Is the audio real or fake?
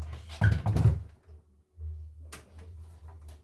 real